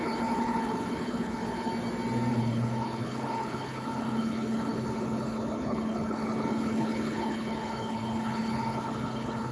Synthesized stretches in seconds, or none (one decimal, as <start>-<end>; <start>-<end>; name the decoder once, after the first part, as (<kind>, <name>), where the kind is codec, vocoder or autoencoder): 0.0-1.7 (codec, HILCodec); 2.3-9.5